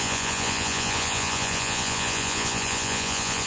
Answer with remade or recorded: remade